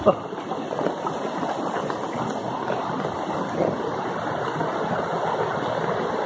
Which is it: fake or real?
real